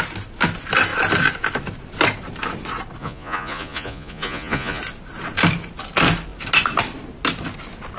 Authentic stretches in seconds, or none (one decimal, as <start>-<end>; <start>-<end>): 0.0-3.0; 4.8-8.0